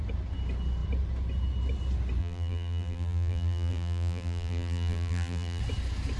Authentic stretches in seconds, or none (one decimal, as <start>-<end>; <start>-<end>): 0.0-2.2; 5.6-6.2